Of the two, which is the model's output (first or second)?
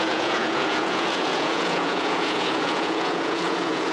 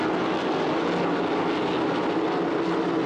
first